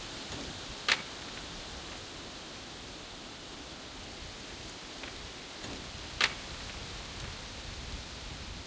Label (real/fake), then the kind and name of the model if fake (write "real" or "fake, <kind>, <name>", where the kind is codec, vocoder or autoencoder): real